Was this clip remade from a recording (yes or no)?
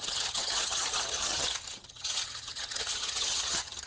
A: yes